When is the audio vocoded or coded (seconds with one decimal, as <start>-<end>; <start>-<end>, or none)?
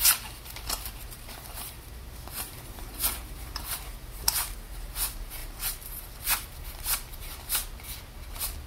0.0-7.6